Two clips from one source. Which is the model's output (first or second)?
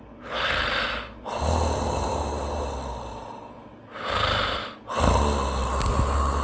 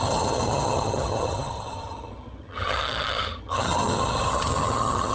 second